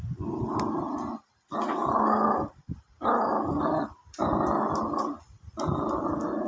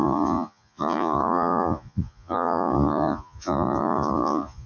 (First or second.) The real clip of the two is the first